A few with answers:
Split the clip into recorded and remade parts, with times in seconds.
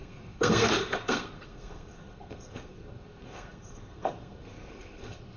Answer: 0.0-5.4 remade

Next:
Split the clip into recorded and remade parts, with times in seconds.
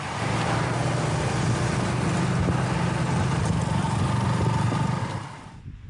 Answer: 0.0-5.9 recorded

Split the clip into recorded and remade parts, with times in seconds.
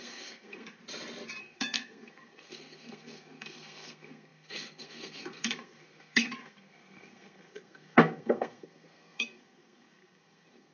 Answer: 0.0-0.8 remade; 0.8-1.4 recorded; 1.4-10.7 remade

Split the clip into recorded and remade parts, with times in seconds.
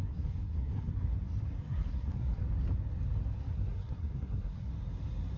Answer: 0.0-0.9 remade; 0.9-1.7 recorded; 1.7-2.4 remade; 2.4-3.5 recorded; 3.5-4.7 remade; 4.7-5.4 recorded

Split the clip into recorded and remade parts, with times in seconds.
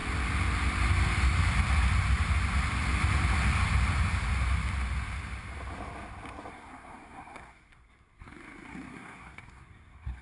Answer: 0.0-6.5 recorded; 6.5-10.2 remade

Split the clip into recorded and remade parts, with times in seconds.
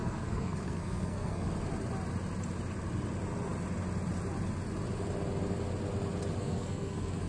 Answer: 0.0-1.5 remade; 1.5-6.4 recorded; 6.4-7.3 remade